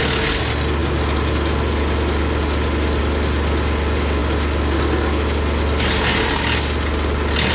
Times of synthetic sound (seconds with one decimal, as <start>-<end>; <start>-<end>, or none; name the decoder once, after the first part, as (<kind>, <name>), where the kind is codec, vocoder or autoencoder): none